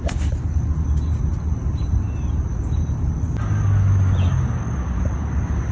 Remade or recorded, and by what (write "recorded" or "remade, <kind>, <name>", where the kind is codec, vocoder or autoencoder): recorded